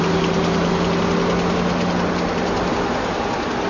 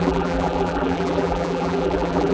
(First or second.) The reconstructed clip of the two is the second